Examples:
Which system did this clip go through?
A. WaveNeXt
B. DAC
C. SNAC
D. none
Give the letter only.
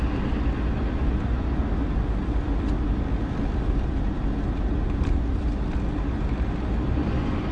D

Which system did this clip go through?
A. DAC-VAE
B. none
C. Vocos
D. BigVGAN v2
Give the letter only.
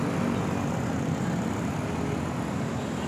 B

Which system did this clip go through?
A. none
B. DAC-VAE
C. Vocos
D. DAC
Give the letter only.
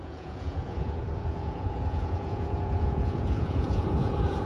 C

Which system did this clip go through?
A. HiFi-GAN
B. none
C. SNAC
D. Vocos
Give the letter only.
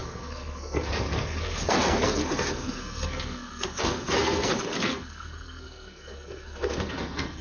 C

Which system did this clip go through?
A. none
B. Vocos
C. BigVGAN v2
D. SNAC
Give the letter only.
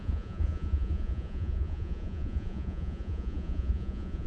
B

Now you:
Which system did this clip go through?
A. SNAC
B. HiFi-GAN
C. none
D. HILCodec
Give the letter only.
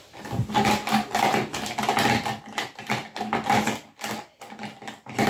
C